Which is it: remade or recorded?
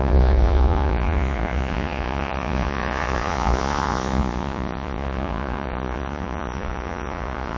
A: remade